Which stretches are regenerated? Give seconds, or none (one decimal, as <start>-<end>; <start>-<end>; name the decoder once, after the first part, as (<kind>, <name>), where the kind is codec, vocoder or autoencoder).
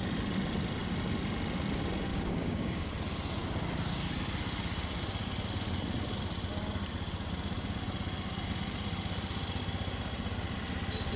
2.1-2.9 (codec, DAC)